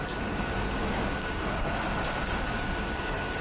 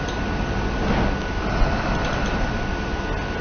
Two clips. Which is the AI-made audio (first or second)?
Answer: first